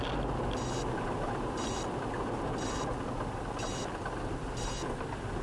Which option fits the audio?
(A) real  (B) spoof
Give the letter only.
A